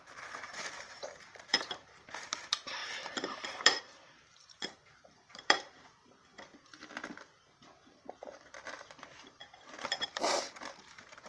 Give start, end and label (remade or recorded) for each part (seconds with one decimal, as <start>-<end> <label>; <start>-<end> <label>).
0.0-6.3 remade; 6.3-7.9 recorded; 7.9-11.3 remade